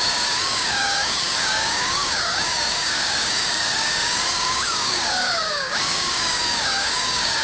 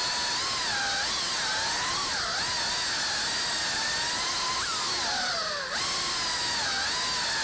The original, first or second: second